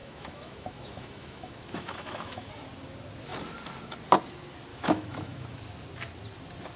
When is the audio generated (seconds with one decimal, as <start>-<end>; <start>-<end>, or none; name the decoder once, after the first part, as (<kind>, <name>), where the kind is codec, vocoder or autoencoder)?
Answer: 0.0-2.5 (autoencoder, DAC-VAE); 4.7-5.6